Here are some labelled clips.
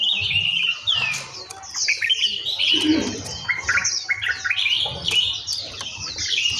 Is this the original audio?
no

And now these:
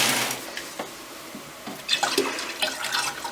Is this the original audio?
yes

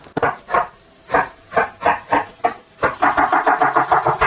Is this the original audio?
yes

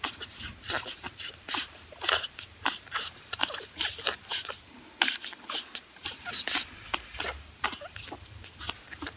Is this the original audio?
no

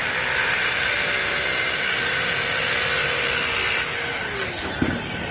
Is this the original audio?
yes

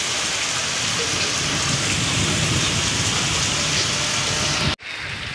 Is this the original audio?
yes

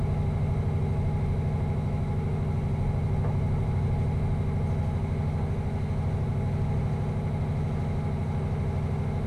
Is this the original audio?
yes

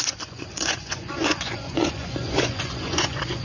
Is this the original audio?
no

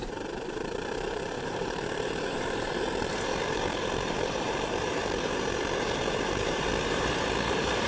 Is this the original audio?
no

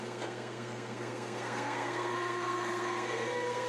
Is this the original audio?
no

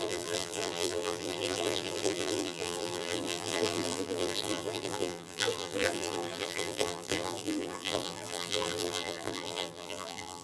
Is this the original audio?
no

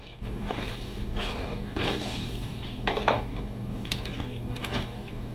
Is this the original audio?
no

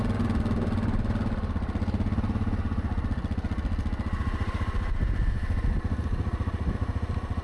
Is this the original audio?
yes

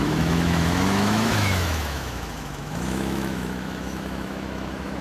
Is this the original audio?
no